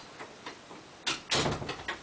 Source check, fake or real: real